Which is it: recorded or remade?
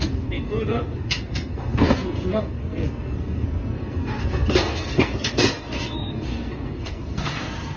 remade